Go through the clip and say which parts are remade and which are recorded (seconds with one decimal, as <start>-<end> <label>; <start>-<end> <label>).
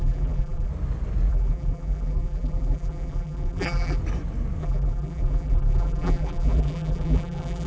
0.0-0.7 remade; 0.7-1.3 recorded; 1.3-4.0 remade; 4.0-4.6 recorded; 4.6-7.7 remade